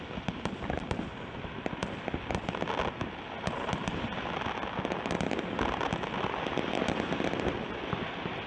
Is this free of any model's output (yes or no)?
yes